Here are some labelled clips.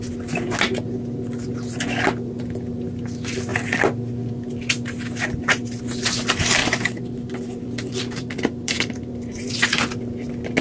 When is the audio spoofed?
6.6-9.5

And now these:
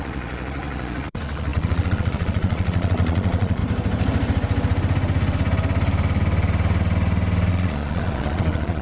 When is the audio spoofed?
0.0-3.6; 7.5-8.8

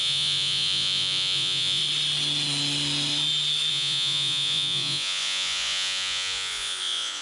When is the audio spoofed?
0.0-1.8; 3.7-7.2

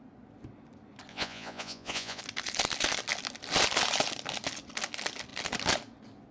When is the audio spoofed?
1.1-2.2

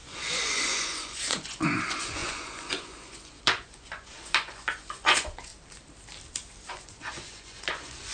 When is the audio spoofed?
0.0-5.5; 6.7-8.1

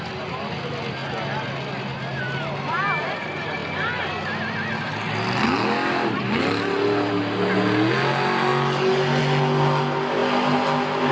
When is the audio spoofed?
none

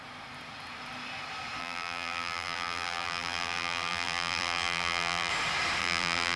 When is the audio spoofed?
1.6-5.3; 5.8-6.4